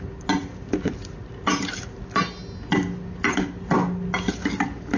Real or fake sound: real